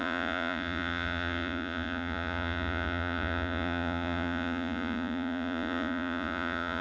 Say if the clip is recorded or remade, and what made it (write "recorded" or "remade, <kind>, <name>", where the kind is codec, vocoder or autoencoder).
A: remade, vocoder, Vocos